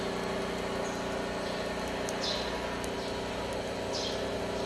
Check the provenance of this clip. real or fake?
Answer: real